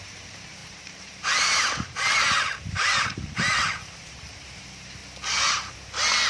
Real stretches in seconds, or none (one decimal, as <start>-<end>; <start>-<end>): 5.0-6.3